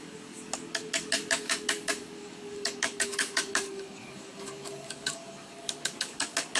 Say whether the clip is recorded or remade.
remade